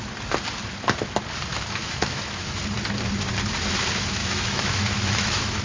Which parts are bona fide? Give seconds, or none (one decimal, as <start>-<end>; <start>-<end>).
0.0-1.5; 2.6-4.2